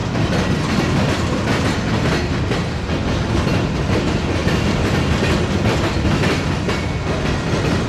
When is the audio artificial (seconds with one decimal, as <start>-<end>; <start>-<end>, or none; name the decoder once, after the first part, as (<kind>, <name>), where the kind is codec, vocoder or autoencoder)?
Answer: 0.0-1.1 (vocoder, BigVGAN v2); 4.4-5.1